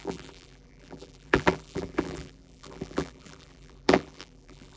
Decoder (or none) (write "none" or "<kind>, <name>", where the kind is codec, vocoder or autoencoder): vocoder, BigVGAN v2